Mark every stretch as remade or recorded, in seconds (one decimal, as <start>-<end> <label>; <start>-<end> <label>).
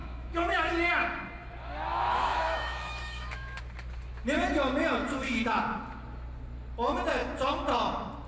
0.0-0.7 remade; 0.7-1.9 recorded; 1.9-3.6 remade; 3.6-5.0 recorded; 5.0-5.6 remade; 5.6-8.3 recorded